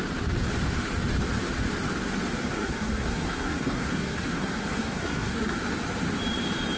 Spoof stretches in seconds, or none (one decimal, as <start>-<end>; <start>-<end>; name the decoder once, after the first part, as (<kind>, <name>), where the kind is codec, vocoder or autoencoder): 2.3-5.6 (codec, SNAC)